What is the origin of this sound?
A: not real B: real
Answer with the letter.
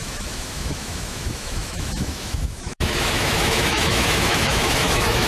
A